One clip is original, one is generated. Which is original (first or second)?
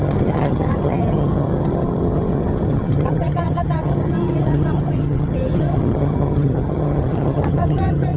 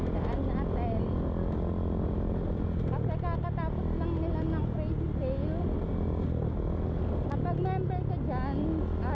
second